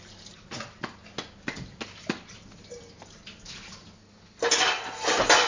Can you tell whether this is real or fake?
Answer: real